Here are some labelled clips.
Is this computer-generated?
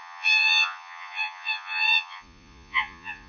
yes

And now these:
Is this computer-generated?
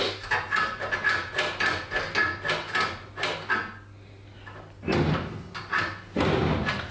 no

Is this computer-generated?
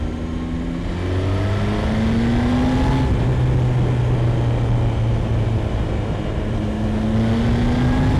no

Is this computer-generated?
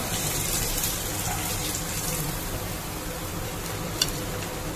yes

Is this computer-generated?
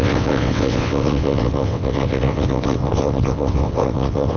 yes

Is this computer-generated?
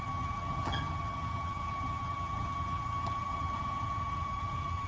yes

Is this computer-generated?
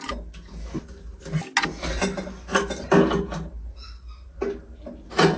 no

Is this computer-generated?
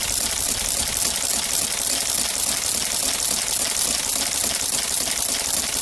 no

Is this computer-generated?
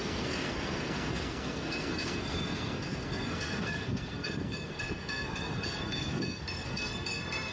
yes